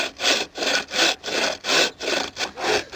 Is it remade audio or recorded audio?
remade